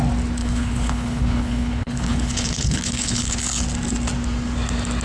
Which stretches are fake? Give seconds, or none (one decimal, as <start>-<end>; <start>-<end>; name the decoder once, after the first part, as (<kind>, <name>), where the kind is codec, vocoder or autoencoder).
0.4-3.4 (codec, HILCodec)